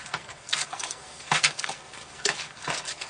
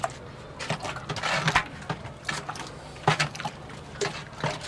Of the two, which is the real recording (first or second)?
second